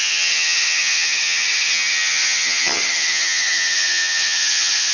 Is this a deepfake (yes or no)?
yes